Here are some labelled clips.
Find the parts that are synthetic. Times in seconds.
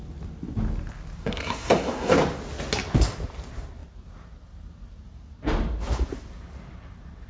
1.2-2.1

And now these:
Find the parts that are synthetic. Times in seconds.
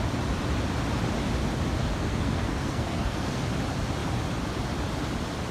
1.8-3.5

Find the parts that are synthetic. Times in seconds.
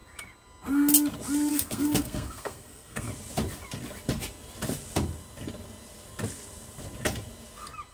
1.5-3.1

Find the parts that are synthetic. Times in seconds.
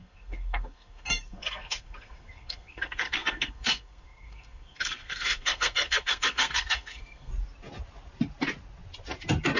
0.0-7.3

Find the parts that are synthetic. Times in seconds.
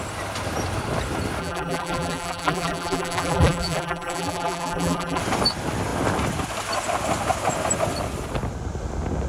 1.4-5.2